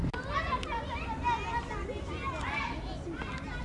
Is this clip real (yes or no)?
yes